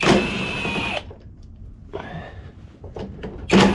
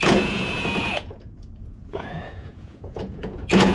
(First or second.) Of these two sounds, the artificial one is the second